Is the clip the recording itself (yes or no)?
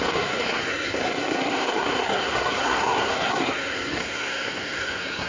no